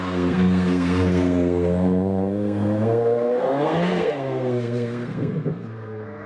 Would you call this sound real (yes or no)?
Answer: no